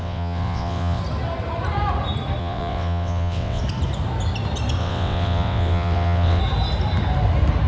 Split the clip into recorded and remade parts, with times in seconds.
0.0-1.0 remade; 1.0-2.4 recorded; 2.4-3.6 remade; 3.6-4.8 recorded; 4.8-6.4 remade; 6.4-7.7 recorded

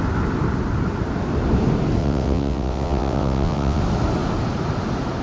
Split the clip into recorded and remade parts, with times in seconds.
0.0-2.0 recorded; 2.0-3.8 remade; 3.8-5.2 recorded

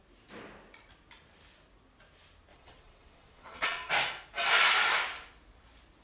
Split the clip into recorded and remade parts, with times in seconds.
0.0-2.5 recorded; 2.5-3.9 remade; 3.9-6.0 recorded

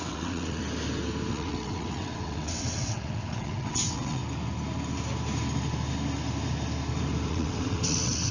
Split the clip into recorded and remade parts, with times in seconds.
0.0-0.6 remade; 0.6-1.3 recorded; 1.3-4.2 remade; 4.2-7.3 recorded; 7.3-8.3 remade

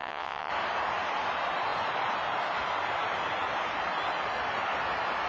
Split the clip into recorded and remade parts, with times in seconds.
0.0-0.5 remade; 0.5-5.3 recorded

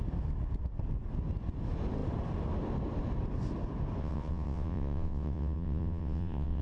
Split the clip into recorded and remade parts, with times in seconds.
0.0-4.0 recorded; 4.0-6.6 remade